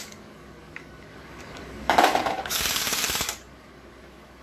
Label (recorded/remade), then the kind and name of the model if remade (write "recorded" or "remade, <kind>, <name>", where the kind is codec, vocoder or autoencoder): remade, codec, DAC